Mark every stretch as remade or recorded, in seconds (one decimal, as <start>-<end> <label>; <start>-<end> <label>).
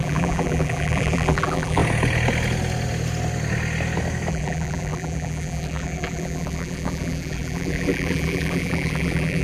0.0-1.8 remade; 1.8-4.3 recorded; 4.3-9.4 remade